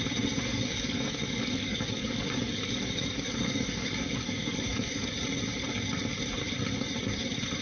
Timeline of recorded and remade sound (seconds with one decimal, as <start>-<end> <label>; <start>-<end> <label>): 0.0-0.5 recorded; 0.5-5.1 remade; 5.1-7.6 recorded